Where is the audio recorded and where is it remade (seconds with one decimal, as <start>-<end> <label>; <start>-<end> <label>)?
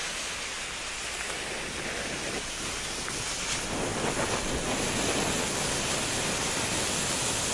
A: 0.0-7.5 recorded